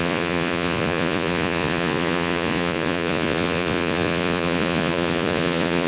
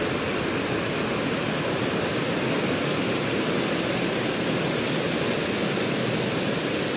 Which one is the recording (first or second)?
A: second